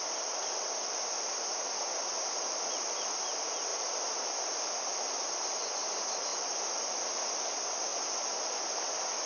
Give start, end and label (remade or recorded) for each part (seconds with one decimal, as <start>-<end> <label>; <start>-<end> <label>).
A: 0.0-3.7 recorded; 3.7-4.6 remade; 4.6-6.3 recorded; 6.3-6.9 remade; 6.9-7.9 recorded; 7.9-8.8 remade; 8.8-9.3 recorded